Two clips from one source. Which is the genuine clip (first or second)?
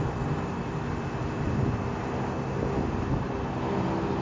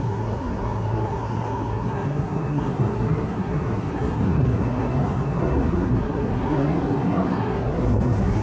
first